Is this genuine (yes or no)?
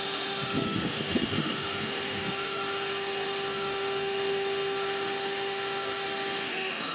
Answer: no